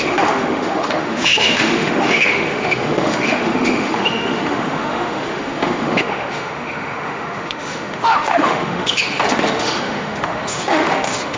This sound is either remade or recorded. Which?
remade